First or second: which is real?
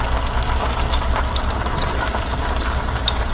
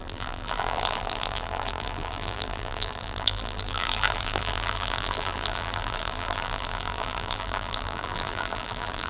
first